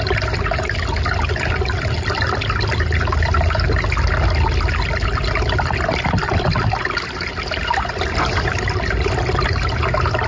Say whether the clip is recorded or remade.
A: recorded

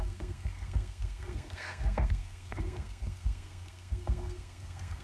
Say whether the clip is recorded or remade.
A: remade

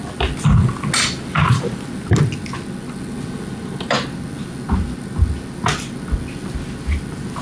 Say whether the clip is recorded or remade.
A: recorded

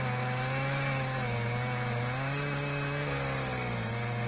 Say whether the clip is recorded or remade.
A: recorded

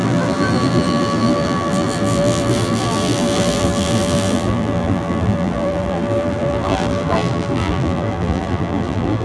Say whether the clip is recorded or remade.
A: remade